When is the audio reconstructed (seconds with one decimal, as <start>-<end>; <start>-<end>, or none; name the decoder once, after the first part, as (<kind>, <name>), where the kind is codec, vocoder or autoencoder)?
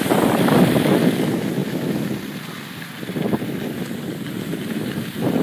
none